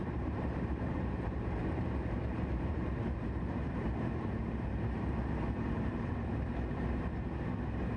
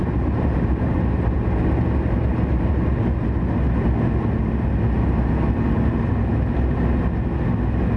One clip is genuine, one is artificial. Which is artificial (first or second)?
first